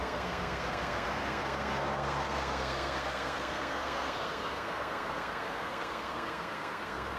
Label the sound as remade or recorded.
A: remade